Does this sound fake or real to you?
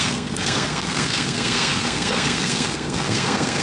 fake